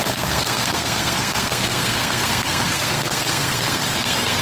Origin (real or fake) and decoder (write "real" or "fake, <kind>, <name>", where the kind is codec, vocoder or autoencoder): fake, codec, SNAC